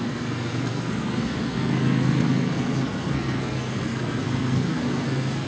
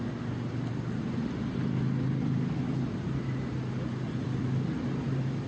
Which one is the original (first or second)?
second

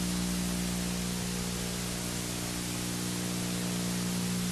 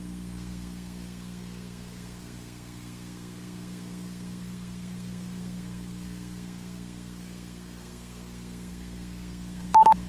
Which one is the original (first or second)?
first